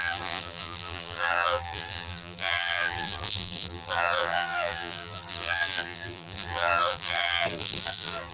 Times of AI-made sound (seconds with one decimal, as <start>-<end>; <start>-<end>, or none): 0.0-8.3